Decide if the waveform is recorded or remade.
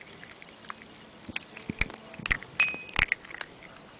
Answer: recorded